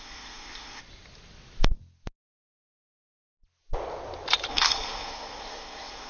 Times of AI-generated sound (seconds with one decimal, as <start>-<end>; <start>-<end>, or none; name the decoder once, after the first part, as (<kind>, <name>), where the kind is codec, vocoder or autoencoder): 0.0-0.8 (codec, SNAC); 4.5-6.1

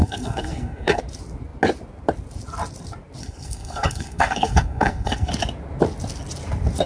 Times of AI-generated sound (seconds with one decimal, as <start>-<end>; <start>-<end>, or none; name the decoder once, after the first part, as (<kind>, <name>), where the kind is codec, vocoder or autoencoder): 0.0-1.0 (codec, SNAC); 3.2-5.3

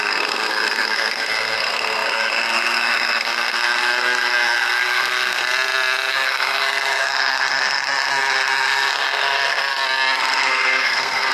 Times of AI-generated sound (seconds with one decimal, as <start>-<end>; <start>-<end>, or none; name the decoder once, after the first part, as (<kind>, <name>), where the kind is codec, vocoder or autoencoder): 0.0-5.4 (codec, SNAC); 6.1-9.6; 10.2-11.3

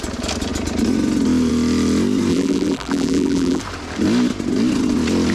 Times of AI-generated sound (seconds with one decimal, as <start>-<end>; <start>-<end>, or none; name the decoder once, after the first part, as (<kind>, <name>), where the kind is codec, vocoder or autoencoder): 2.3-3.6 (vocoder, BigVGAN v2)